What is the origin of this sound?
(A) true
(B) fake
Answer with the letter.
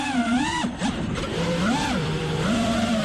B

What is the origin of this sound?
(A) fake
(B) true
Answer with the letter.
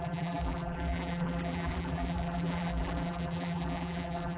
A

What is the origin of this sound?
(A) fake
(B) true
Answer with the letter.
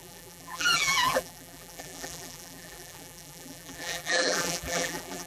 A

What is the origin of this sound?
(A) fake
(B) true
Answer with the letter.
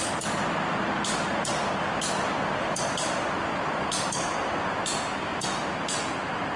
B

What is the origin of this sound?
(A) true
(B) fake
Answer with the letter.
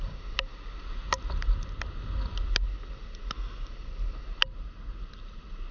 A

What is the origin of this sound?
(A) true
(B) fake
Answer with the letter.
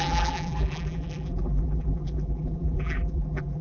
B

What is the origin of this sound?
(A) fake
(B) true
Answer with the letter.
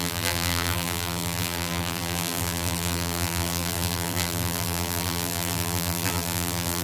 A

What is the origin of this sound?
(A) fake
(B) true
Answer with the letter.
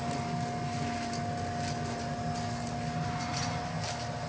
B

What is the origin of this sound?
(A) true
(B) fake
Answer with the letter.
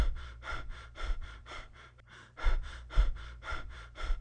B